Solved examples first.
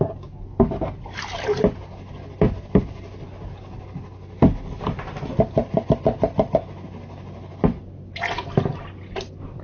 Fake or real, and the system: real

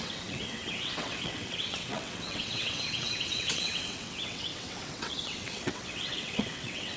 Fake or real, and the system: fake, vocoder, WaveNeXt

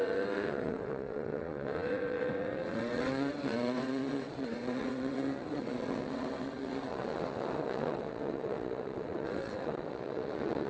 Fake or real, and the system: fake, vocoder, WaveNeXt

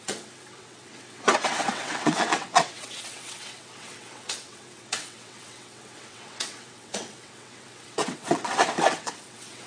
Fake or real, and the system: fake, vocoder, WaveNeXt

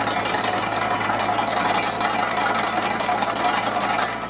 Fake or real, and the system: real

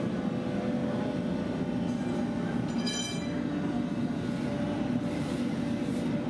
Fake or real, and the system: real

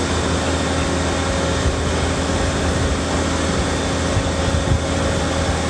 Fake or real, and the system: real